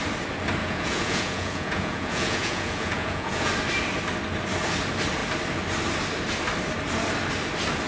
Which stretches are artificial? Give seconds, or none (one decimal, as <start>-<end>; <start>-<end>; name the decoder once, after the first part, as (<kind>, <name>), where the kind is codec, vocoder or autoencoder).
0.6-3.5 (vocoder, Vocos)